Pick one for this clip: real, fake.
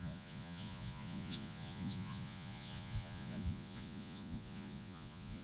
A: fake